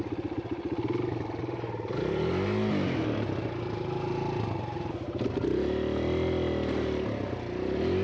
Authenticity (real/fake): real